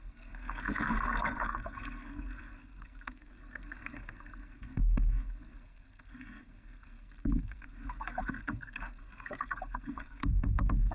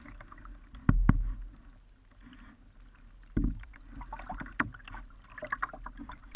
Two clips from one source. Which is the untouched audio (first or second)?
second